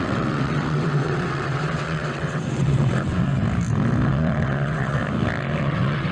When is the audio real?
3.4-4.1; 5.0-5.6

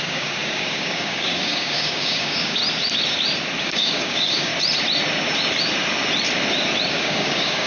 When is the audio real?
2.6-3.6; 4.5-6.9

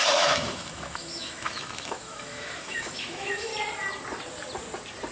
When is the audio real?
3.5-5.1

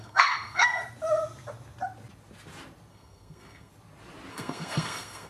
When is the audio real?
0.8-2.9; 3.7-4.3

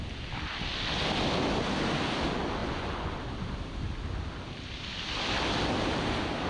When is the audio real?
0.0-2.6; 3.1-6.5

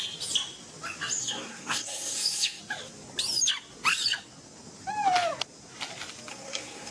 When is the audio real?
0.0-1.2; 2.6-6.3

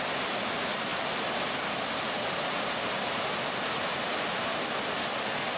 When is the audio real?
0.0-5.6